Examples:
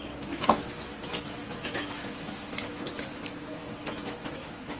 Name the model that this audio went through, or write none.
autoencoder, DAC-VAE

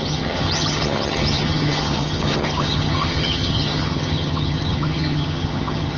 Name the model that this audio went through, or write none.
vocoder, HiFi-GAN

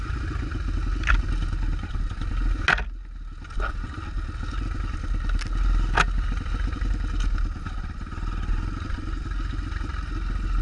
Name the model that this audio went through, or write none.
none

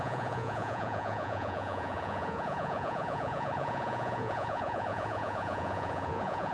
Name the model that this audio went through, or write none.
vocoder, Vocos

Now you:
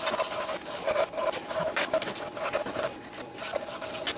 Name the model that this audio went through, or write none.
none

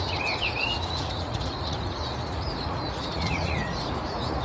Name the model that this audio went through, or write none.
vocoder, Vocos